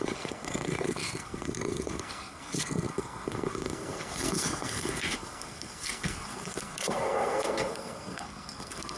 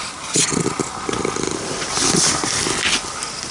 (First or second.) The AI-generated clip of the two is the first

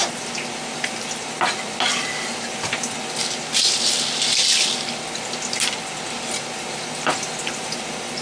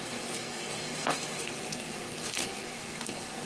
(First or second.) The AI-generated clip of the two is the second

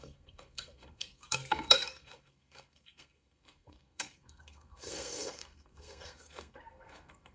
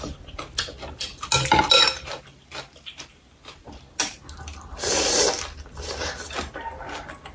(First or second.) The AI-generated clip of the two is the first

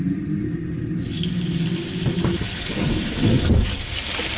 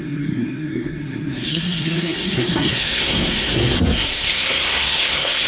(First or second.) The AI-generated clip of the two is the second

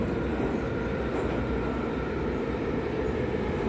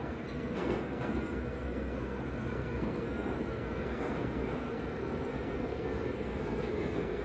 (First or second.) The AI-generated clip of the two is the second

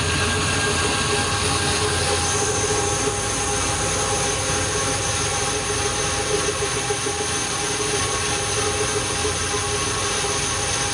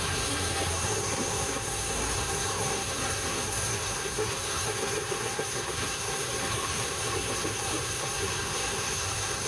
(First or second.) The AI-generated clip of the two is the second